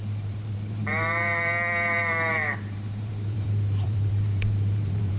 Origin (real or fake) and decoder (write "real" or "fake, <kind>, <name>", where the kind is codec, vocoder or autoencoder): fake, vocoder, BigVGAN v2